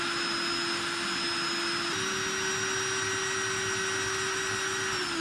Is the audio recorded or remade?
recorded